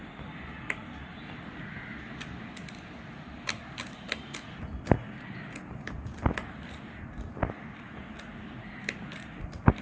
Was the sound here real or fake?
real